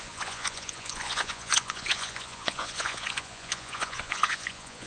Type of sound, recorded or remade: remade